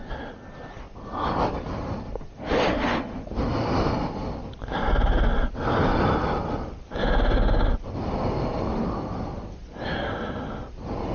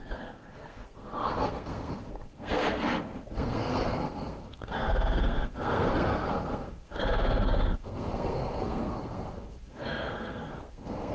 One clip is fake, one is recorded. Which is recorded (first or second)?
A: first